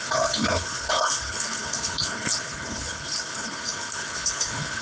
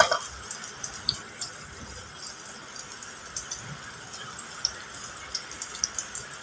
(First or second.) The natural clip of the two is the second